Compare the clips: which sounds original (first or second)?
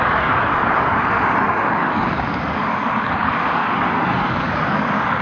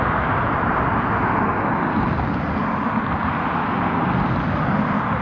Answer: second